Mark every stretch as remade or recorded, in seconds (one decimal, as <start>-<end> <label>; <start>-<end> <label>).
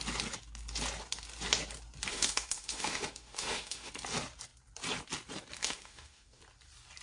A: 0.0-2.1 recorded; 2.1-3.9 remade; 3.9-5.6 recorded; 5.6-6.4 remade; 6.4-7.0 recorded